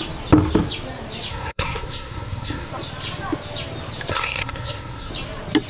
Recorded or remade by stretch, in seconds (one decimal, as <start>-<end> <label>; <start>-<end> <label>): 0.0-1.3 recorded; 1.3-2.7 remade; 2.7-4.1 recorded; 4.1-5.1 remade; 5.1-5.7 recorded

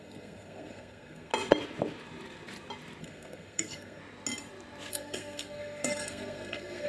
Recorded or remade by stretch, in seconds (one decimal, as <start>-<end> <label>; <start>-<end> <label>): 0.0-1.3 remade; 1.3-3.0 recorded; 3.0-4.0 remade; 4.0-4.9 recorded; 4.9-6.9 remade

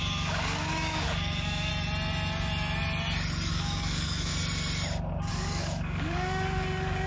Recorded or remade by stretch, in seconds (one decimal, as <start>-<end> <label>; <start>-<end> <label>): 0.0-1.7 remade; 1.7-3.5 recorded; 3.5-4.3 remade; 4.3-5.3 recorded; 5.3-7.1 remade

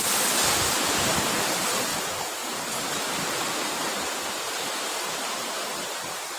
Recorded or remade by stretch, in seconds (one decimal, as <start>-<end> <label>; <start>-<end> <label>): 0.0-6.4 recorded

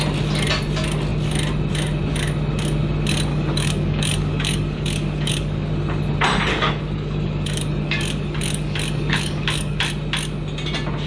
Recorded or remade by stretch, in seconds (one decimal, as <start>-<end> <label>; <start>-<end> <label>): 0.0-3.3 recorded; 3.3-5.7 remade; 5.7-6.5 recorded; 6.5-9.8 remade; 9.8-11.1 recorded

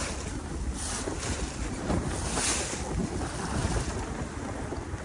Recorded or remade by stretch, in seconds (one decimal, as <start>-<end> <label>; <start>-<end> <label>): 0.0-5.0 recorded